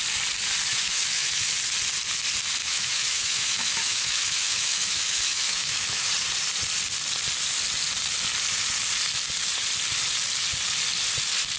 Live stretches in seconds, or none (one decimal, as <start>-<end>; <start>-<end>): 0.0-0.7; 1.5-2.6; 6.1-11.6